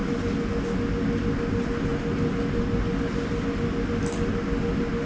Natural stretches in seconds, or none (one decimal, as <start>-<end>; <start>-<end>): 0.0-5.1